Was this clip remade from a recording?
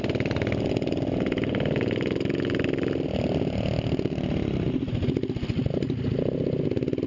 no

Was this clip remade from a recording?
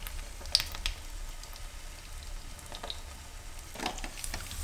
no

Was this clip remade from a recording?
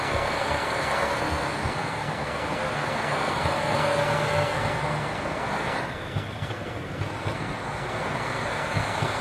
yes